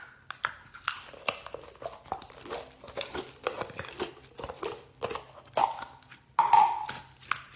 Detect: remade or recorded recorded